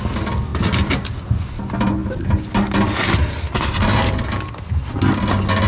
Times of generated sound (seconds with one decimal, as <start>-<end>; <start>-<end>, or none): none